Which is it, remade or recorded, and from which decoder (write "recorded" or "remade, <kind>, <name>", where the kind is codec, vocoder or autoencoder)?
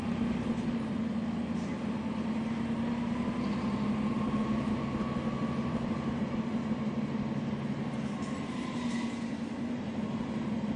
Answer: recorded